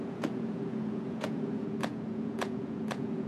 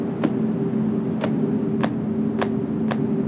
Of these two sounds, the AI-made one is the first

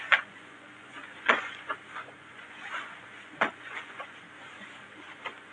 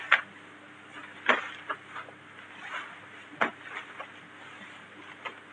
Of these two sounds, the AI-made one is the first